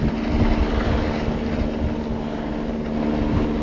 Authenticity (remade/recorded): recorded